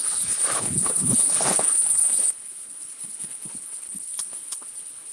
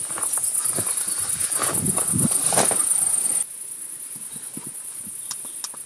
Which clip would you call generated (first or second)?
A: first